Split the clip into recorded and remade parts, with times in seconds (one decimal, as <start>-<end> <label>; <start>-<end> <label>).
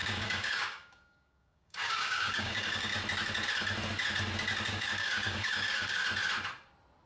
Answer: 0.0-2.9 remade; 2.9-4.7 recorded; 4.7-6.0 remade; 6.0-7.1 recorded